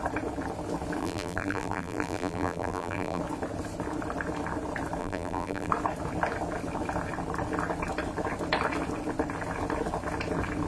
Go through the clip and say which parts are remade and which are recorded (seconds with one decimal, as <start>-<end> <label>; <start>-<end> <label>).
0.0-1.0 recorded; 1.0-3.2 remade; 3.2-5.0 recorded; 5.0-5.7 remade; 5.7-10.7 recorded

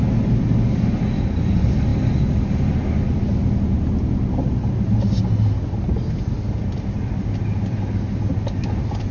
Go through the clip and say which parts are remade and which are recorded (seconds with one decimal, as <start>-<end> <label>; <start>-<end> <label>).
0.0-9.1 recorded

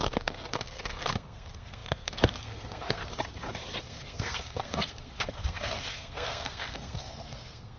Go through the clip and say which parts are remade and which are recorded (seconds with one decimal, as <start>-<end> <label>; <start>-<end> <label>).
0.0-3.0 remade; 3.0-3.8 recorded; 3.8-7.8 remade

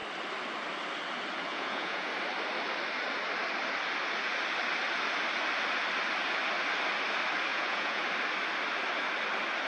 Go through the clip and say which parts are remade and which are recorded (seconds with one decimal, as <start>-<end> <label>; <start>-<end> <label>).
0.0-1.5 recorded; 1.5-2.1 remade; 2.1-7.5 recorded; 7.5-8.0 remade; 8.0-9.7 recorded